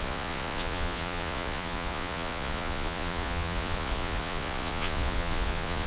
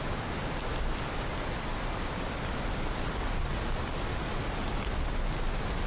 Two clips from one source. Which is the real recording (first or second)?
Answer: second